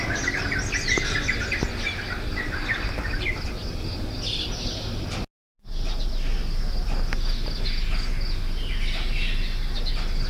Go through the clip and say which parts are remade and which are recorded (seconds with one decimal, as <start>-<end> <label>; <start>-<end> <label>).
0.0-10.3 recorded